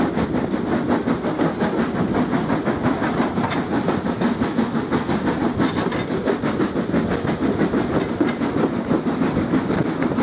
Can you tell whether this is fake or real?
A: real